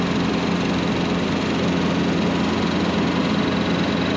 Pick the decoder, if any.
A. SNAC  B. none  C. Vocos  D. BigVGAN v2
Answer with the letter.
B